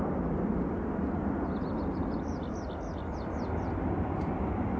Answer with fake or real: real